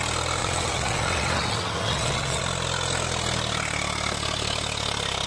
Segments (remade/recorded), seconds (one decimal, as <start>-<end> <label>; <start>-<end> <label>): 0.0-0.4 recorded; 0.4-2.4 remade; 2.4-5.3 recorded

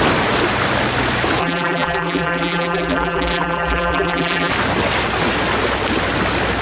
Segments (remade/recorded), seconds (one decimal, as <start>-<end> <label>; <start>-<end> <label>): 0.0-1.4 recorded; 1.4-4.5 remade; 4.5-6.6 recorded

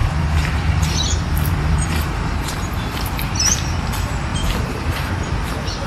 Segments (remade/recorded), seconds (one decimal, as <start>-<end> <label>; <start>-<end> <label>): 0.0-3.5 remade; 3.5-4.3 recorded; 4.3-5.1 remade; 5.1-5.9 recorded

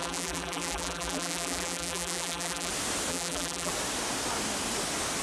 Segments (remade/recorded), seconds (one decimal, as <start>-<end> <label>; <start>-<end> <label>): 0.0-2.7 remade; 2.7-3.1 recorded; 3.1-3.7 remade; 3.7-5.2 recorded